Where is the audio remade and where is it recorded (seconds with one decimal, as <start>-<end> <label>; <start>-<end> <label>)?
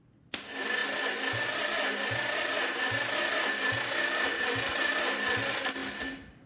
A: 0.0-6.5 recorded